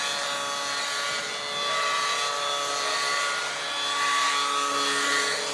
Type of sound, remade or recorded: recorded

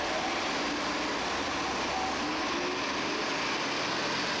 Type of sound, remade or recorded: recorded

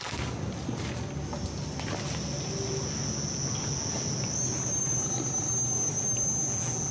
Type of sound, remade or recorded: recorded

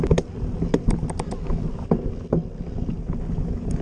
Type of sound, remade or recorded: recorded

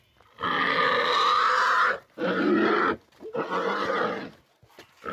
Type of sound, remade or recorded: recorded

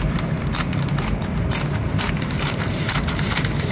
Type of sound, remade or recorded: remade